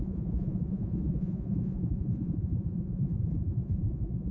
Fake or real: fake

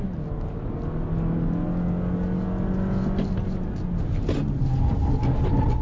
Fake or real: real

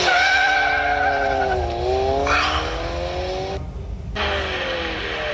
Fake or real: real